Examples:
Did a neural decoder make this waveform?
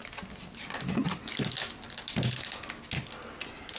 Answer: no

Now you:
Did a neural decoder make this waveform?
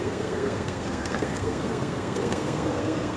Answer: yes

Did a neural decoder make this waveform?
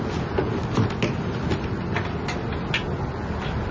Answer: no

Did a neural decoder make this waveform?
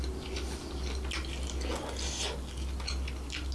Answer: no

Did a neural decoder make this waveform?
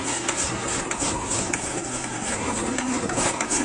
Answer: yes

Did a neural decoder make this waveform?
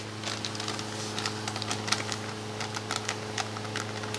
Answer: no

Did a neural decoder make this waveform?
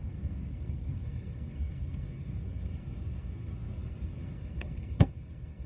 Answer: yes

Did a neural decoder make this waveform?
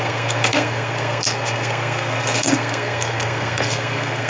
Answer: yes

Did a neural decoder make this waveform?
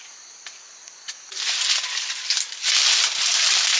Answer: no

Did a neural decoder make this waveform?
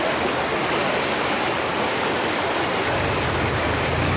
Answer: no